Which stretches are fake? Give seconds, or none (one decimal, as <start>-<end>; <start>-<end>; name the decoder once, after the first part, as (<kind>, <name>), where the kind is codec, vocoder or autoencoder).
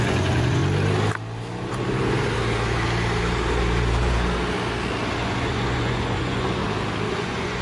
0.0-0.6 (vocoder, Vocos); 5.2-6.6; 7.1-7.6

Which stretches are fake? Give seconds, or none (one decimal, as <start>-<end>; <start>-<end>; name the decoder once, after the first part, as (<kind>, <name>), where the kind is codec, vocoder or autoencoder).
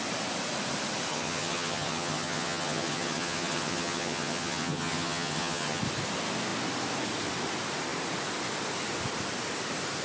1.1-5.8 (vocoder, HiFi-GAN)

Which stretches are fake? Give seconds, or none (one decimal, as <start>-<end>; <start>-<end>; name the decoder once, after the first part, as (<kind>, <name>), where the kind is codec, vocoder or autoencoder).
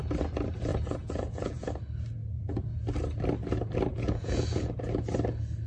0.7-1.7 (vocoder, Vocos); 2.2-2.8; 3.9-4.8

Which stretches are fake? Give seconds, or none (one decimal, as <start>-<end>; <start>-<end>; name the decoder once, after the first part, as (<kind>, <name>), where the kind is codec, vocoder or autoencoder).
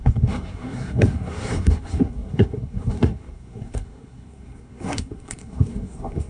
0.0-6.3 (codec, SNAC)